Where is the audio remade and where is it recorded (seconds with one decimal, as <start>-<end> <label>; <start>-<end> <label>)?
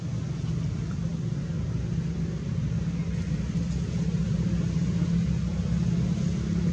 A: 0.0-6.7 recorded